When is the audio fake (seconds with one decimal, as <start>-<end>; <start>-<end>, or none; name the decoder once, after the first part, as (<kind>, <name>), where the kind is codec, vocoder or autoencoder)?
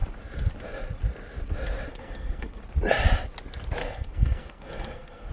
1.9-2.6 (codec, SNAC); 3.8-5.3